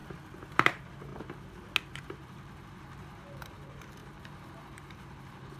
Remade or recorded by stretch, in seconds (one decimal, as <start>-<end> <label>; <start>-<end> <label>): 0.0-0.5 recorded; 0.5-1.1 remade; 1.1-1.9 recorded; 1.9-5.6 remade